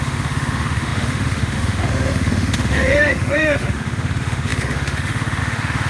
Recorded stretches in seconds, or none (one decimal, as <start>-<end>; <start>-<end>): none